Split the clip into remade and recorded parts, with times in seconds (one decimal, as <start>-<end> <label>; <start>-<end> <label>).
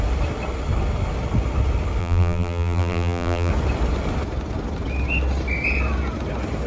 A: 0.0-2.0 recorded; 2.0-3.5 remade; 3.5-6.7 recorded